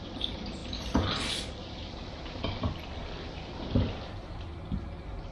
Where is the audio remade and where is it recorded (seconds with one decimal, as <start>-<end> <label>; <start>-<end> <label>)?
0.0-5.3 recorded